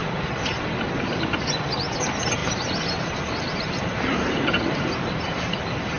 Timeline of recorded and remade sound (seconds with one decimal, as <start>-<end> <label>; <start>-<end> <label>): 0.0-2.4 recorded; 2.4-5.5 remade; 5.5-6.0 recorded